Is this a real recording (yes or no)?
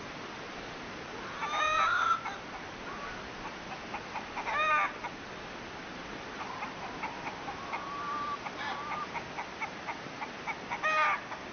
yes